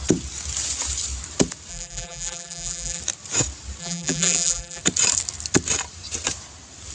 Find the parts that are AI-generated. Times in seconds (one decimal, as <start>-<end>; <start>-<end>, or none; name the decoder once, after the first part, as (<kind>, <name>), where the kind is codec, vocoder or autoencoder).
1.7-3.0 (vocoder, BigVGAN v2); 3.8-4.8